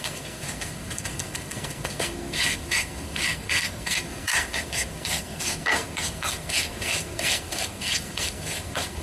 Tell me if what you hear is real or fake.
fake